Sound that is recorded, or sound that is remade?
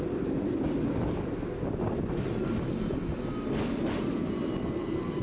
recorded